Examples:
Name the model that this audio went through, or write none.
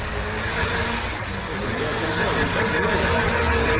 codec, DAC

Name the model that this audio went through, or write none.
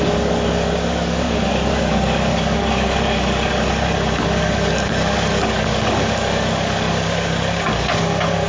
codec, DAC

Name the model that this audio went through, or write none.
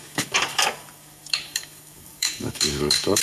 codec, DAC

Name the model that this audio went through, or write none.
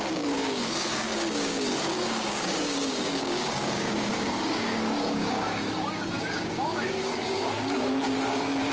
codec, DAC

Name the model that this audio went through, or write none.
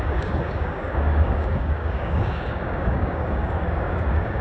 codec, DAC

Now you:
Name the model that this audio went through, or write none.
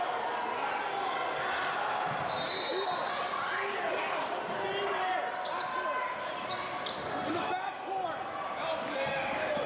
none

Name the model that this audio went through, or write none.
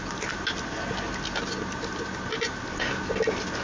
none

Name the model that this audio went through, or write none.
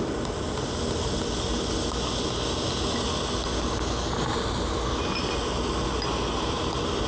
none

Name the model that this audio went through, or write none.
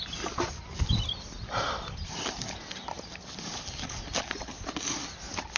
none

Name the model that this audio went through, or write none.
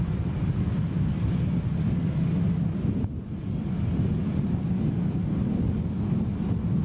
none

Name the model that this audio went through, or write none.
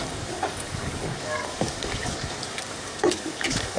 codec, DAC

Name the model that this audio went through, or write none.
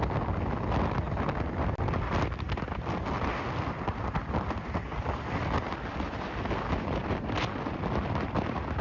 none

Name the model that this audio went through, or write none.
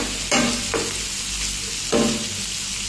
none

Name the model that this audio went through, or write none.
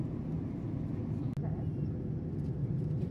none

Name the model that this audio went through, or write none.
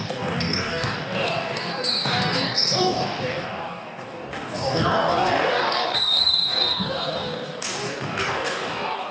codec, DAC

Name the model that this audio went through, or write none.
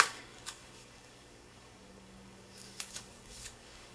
codec, DAC